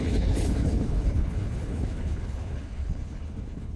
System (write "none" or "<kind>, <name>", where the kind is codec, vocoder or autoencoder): codec, HILCodec